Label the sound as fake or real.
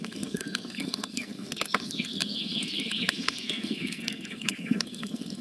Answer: fake